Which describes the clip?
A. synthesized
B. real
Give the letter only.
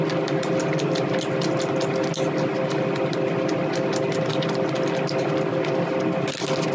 B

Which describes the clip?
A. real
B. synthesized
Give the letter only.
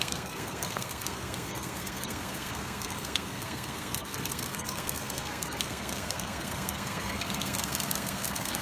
B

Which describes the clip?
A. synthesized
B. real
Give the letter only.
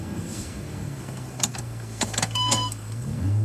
A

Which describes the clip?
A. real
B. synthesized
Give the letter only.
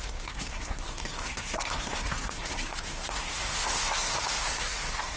B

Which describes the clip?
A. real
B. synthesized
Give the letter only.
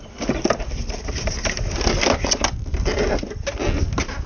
A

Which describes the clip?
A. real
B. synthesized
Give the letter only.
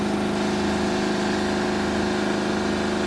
A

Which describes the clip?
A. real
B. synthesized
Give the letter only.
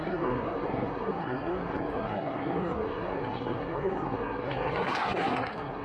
B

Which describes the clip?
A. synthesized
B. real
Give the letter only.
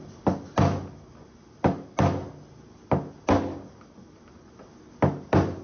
B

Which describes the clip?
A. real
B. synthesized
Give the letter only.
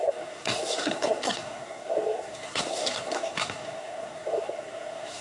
B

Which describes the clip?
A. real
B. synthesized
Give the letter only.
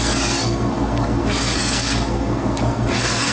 B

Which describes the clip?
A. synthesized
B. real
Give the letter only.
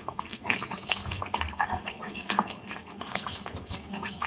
A